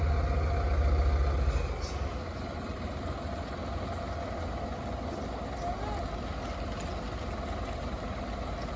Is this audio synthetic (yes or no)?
no